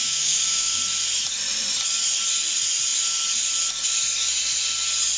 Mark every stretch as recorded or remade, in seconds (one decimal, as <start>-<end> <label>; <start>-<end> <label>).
0.0-0.8 remade; 0.8-5.2 recorded

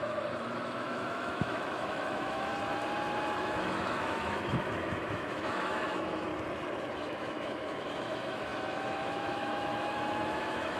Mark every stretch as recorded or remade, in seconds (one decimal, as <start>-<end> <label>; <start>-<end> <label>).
0.0-2.5 remade; 2.5-3.4 recorded; 3.4-6.3 remade; 6.3-6.8 recorded; 6.8-10.8 remade